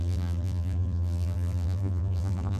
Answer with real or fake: fake